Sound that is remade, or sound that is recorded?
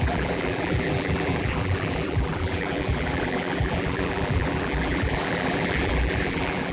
remade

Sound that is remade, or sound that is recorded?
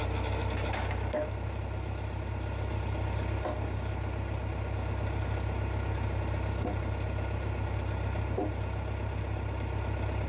recorded